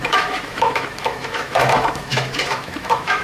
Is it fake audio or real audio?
fake